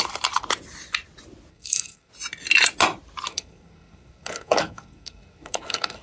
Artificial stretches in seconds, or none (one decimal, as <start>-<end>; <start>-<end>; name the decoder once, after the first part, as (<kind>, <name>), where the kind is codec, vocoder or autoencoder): 1.5-2.1 (codec, SNAC); 3.3-6.0